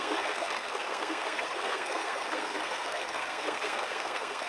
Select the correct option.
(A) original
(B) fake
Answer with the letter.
B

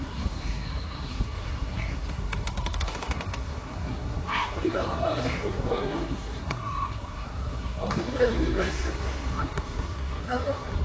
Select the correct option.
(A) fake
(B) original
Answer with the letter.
A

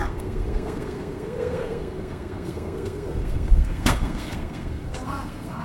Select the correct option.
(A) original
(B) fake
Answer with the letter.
B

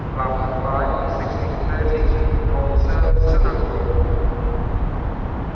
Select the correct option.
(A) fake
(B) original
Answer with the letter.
B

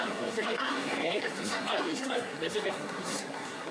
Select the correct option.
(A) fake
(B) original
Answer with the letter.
A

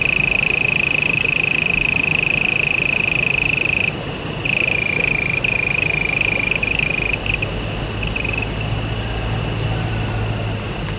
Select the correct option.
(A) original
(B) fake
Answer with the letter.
A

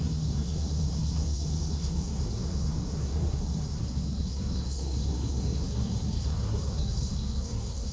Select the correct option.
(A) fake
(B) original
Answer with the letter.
A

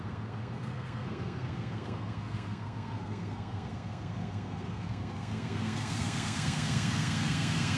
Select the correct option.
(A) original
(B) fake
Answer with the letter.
B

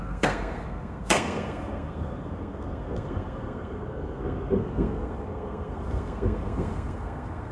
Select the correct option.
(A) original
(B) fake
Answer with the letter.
B